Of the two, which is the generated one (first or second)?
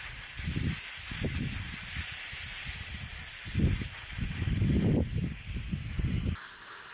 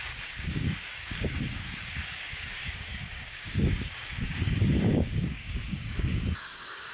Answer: second